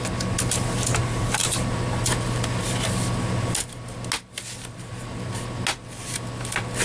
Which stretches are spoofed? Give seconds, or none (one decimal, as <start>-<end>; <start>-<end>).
none